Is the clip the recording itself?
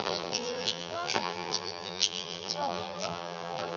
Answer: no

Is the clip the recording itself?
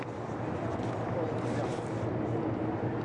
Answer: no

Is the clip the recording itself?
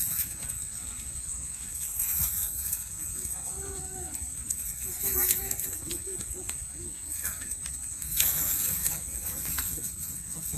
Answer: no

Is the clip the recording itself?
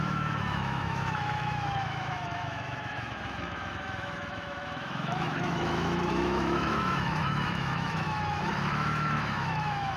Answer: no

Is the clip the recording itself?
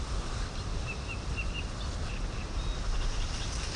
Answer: yes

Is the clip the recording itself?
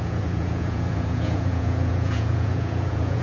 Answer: no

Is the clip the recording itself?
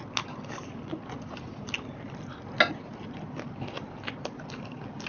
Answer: yes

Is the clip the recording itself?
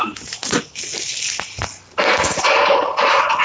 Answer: yes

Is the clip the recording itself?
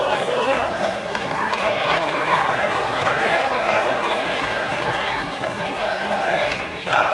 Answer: no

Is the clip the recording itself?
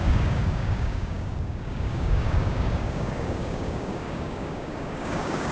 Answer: no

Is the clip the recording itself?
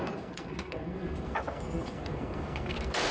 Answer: no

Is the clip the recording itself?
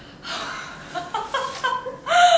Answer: yes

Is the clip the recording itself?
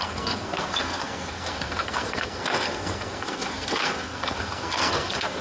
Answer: no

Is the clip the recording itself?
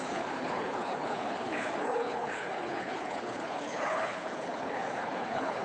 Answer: no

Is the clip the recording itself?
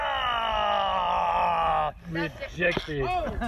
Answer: yes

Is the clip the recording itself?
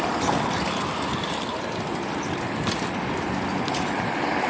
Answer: yes